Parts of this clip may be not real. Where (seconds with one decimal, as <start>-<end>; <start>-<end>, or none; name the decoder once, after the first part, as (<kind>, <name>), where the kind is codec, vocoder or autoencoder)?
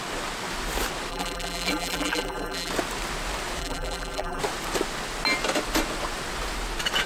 1.1-2.7 (vocoder, BigVGAN v2); 3.6-4.4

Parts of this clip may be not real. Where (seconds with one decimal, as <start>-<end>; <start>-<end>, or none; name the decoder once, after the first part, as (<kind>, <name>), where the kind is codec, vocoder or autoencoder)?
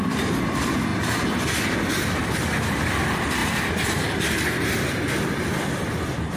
0.0-0.9 (vocoder, BigVGAN v2); 2.2-3.4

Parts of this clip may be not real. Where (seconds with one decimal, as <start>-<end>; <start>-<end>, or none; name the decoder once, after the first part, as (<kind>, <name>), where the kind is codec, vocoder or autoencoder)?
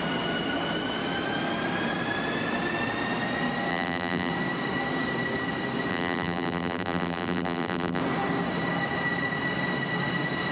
3.7-4.3 (vocoder, BigVGAN v2); 5.9-8.0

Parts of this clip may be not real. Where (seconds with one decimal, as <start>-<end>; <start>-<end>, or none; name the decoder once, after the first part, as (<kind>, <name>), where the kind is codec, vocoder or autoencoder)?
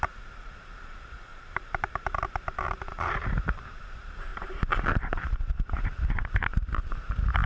1.3-3.9 (vocoder, BigVGAN v2); 4.3-7.5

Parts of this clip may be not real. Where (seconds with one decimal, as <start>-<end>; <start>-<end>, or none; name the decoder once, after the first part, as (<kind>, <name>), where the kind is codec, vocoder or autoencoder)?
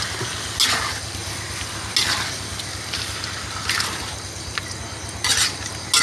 none